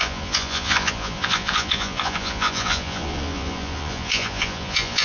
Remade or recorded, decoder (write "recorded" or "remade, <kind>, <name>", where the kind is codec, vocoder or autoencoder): remade, vocoder, Vocos